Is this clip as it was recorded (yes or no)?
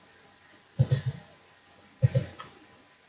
yes